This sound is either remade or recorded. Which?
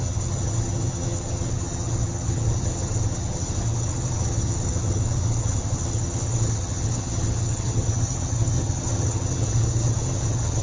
remade